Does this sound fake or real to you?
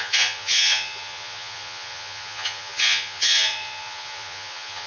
fake